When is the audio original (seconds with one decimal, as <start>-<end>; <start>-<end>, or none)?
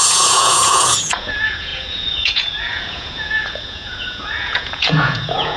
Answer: none